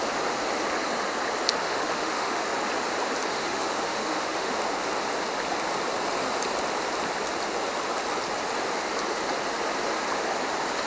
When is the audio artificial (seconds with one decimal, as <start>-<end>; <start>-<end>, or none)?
1.6-2.4; 3.3-4.5